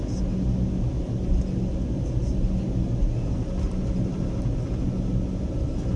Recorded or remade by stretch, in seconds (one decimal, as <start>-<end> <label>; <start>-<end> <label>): 0.0-6.0 recorded